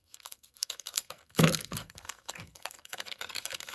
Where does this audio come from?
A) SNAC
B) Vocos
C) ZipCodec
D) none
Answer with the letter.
A